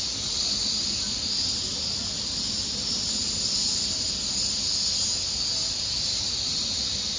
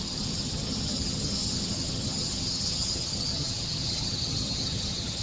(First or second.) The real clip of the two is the first